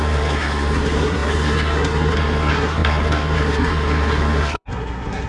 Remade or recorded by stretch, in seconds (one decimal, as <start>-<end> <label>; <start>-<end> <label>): 0.0-5.3 remade